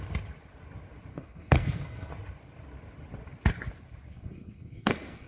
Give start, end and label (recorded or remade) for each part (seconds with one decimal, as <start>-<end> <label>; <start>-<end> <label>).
0.0-1.1 recorded; 1.1-2.1 remade; 2.1-4.1 recorded; 4.1-5.3 remade